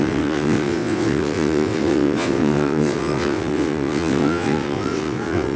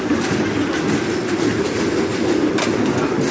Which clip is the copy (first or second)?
first